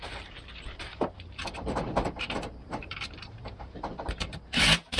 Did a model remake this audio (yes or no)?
yes